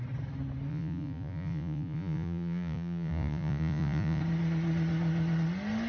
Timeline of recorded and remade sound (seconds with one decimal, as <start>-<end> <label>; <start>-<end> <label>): 0.0-0.7 recorded; 0.7-4.2 remade; 4.2-5.9 recorded